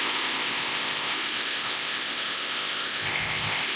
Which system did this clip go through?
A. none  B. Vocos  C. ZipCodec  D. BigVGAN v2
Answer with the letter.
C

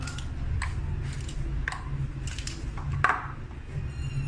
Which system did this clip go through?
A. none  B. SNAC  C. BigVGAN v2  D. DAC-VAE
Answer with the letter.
A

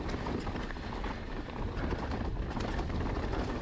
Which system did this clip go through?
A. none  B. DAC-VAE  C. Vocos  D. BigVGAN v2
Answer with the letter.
A